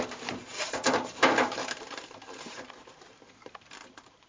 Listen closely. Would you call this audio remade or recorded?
remade